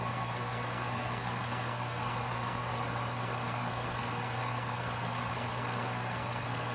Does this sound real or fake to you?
fake